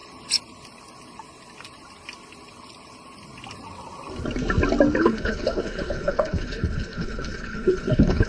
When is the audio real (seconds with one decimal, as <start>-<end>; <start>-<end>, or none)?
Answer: 0.0-5.0